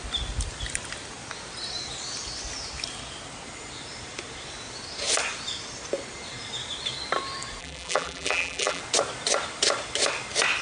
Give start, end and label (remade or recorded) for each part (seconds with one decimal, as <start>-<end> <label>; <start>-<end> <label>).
0.0-7.6 recorded; 7.6-8.8 remade; 8.8-10.6 recorded